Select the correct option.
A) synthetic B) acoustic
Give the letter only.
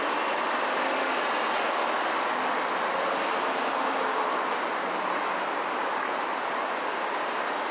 B